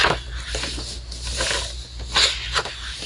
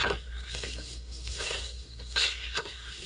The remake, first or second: second